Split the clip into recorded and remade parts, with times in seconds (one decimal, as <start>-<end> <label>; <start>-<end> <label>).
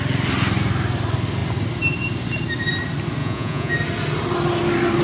0.0-3.2 recorded; 3.2-3.7 remade; 3.7-5.0 recorded